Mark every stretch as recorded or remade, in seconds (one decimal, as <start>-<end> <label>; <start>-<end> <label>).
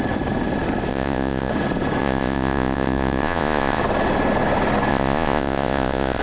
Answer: 0.0-0.9 recorded; 0.9-1.5 remade; 1.5-2.0 recorded; 2.0-3.8 remade; 3.8-4.9 recorded; 4.9-6.2 remade